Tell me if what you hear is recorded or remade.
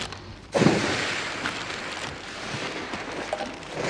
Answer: remade